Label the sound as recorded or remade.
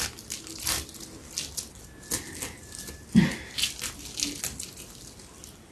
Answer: recorded